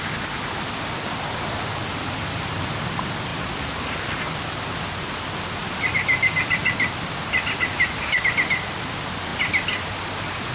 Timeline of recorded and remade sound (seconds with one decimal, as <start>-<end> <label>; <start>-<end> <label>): 0.0-1.8 recorded; 1.8-2.6 remade; 2.6-3.3 recorded; 3.3-3.9 remade; 3.9-10.5 recorded